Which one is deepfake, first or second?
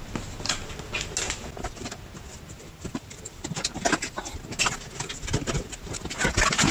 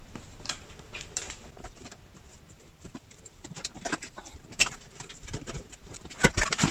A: second